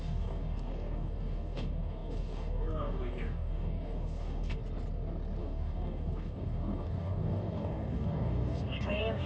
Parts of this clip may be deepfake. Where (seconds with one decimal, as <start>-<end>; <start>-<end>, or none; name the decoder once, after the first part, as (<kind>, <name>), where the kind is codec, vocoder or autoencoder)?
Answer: 0.0-4.6 (codec, DAC); 5.4-9.3